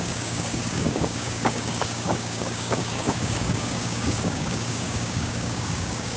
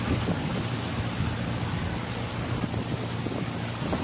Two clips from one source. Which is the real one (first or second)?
second